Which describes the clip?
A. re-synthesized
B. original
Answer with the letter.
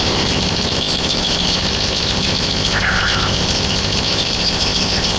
A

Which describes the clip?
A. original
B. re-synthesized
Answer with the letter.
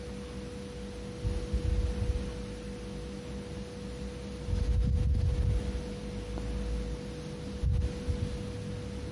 A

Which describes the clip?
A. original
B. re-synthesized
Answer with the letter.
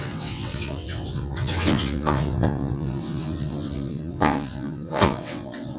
B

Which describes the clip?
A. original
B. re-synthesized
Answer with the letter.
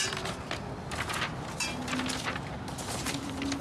A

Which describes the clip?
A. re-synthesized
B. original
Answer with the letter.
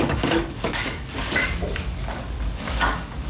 A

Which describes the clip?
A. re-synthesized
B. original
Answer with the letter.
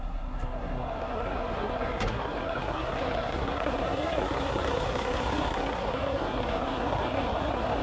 A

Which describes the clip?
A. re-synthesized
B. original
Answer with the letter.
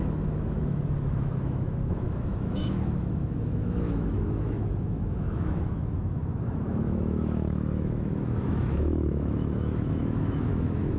A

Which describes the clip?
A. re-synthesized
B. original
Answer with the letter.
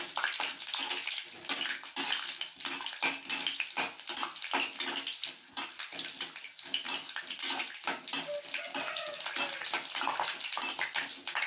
B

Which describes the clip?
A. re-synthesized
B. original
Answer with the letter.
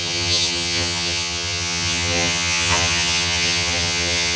A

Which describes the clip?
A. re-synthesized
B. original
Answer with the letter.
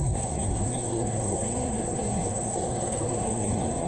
A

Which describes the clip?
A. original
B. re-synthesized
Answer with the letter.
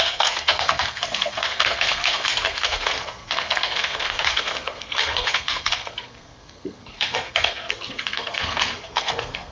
B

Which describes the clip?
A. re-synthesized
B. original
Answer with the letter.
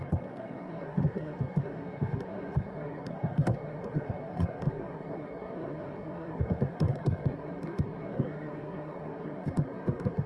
A